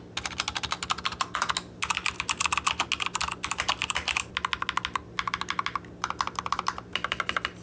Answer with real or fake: real